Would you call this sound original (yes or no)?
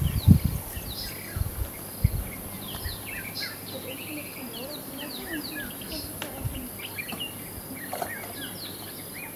yes